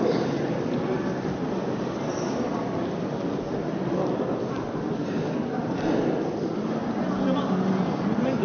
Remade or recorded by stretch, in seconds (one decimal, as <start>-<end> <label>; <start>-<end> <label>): 0.0-8.4 recorded

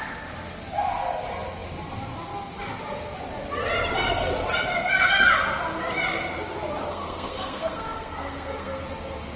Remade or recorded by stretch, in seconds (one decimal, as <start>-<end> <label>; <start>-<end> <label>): 0.0-6.9 recorded; 6.9-8.8 remade; 8.8-9.4 recorded

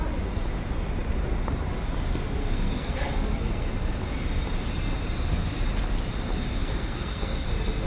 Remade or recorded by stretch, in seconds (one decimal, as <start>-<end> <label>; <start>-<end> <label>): 0.0-2.4 recorded; 2.4-3.7 remade; 3.7-6.6 recorded; 6.6-7.5 remade; 7.5-7.9 recorded